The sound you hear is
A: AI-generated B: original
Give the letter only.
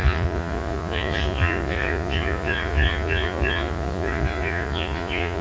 A